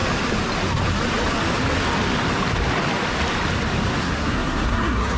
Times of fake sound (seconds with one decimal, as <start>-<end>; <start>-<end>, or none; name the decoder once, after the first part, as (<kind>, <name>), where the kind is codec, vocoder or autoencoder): 4.0-5.2 (codec, SNAC)